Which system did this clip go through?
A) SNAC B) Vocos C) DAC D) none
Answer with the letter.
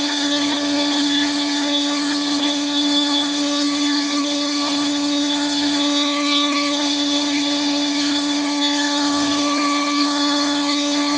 A